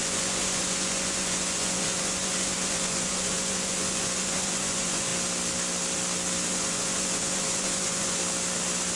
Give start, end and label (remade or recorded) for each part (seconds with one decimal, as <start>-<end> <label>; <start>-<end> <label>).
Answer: 0.0-5.1 remade; 5.1-6.5 recorded; 6.5-8.2 remade; 8.2-9.0 recorded